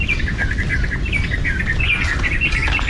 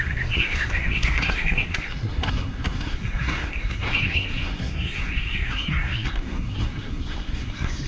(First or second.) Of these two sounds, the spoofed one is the second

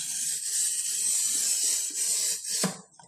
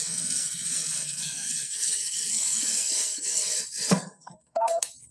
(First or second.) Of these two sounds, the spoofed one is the second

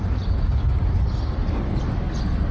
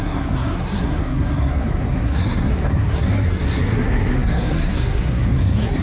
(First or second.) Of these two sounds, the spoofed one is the second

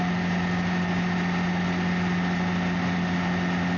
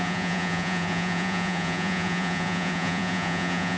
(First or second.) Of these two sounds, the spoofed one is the second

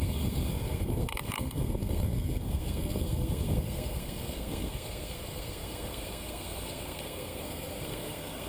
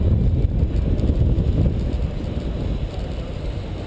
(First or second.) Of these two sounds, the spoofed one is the first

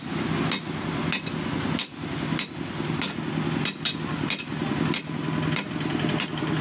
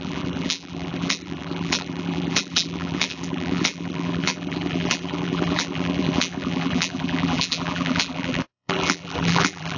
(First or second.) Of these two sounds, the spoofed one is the second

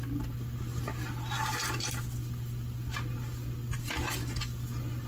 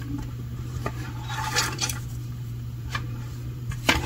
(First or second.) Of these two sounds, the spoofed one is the second